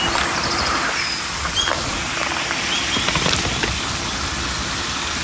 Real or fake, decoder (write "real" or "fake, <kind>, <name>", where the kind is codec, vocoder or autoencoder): real